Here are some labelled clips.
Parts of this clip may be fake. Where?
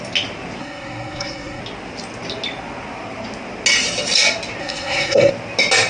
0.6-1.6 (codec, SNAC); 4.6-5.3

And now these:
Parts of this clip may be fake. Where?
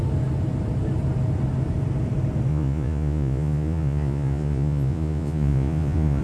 2.5-6.2 (vocoder, Vocos)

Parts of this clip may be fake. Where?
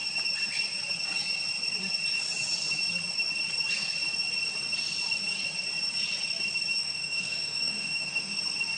6.8-8.4 (autoencoder, DAC-VAE)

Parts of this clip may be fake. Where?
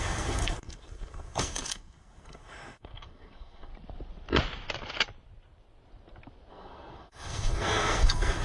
0.0-3.7 (codec, SNAC); 6.5-8.4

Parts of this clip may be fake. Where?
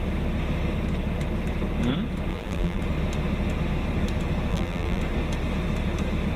2.3-2.8 (vocoder, BigVGAN v2); 4.5-5.0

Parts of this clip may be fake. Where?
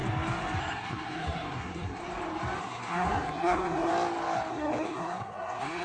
0.6-2.0 (codec, SNAC); 2.6-3.9; 4.5-5.8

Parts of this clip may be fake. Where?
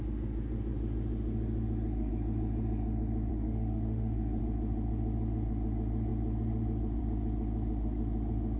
3.3-4.4 (autoencoder, DAC-VAE)